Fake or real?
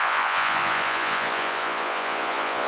fake